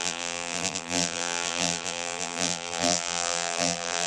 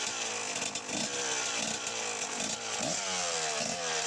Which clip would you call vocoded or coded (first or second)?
first